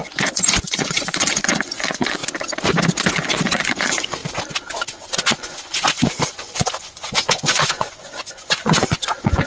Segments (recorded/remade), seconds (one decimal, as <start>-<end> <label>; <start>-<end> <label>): 0.0-2.2 remade; 2.2-3.1 recorded; 3.1-4.2 remade; 4.2-4.9 recorded; 4.9-9.5 remade